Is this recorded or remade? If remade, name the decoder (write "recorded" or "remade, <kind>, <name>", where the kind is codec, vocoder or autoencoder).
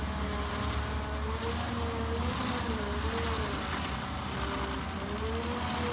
recorded